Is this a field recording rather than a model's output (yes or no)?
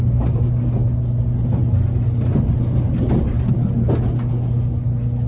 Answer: yes